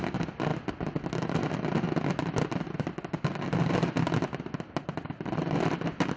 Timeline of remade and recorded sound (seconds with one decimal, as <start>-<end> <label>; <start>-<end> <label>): 0.0-6.2 recorded